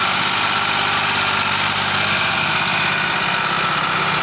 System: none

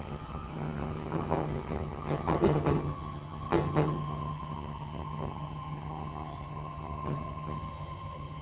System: vocoder, HiFi-GAN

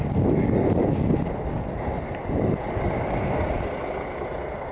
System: none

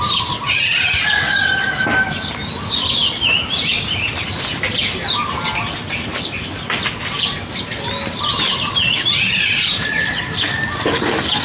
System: none